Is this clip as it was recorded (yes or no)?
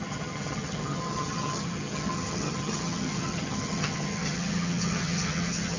no